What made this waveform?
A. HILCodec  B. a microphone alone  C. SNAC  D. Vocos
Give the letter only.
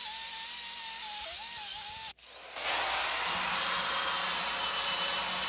B